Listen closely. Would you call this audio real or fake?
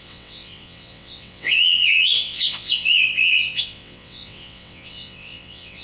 fake